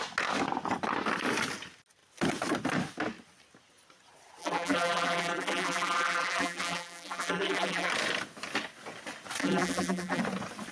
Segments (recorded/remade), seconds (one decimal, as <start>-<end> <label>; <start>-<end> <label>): 0.0-4.4 recorded; 4.4-7.9 remade; 7.9-9.4 recorded; 9.4-10.2 remade; 10.2-10.7 recorded